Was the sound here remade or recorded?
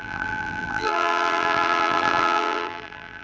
remade